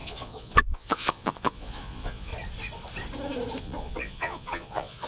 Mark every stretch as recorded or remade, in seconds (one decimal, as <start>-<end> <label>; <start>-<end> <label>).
0.0-2.3 remade; 2.3-3.6 recorded; 3.6-5.1 remade